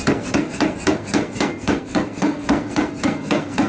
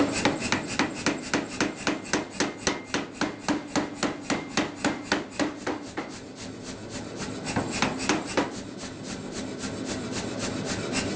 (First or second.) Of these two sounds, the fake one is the first